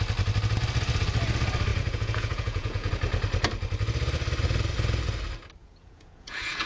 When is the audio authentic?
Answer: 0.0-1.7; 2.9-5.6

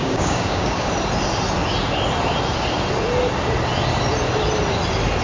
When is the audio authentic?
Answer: 0.9-5.2

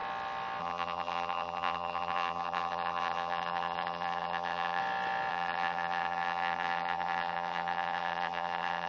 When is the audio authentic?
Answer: 0.0-0.6; 4.8-5.3

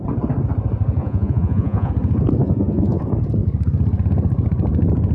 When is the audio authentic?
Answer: 0.0-1.0; 1.9-2.4; 3.0-5.1

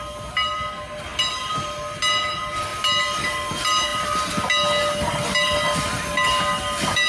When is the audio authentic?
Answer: 0.0-7.1

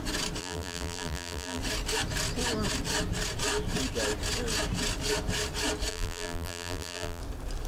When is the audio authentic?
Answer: 0.0-0.4; 1.6-5.9; 7.2-7.7

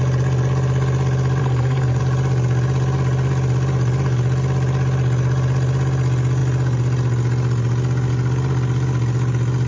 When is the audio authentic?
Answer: 0.0-1.4; 2.0-9.7